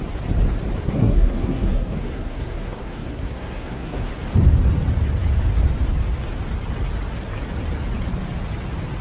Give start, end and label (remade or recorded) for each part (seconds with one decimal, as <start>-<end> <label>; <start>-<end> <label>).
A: 0.0-0.8 recorded; 0.8-4.1 remade; 4.1-9.0 recorded